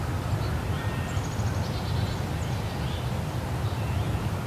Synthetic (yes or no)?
no